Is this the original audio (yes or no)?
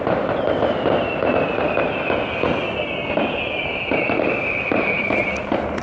yes